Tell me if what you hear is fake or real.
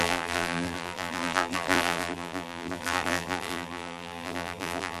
fake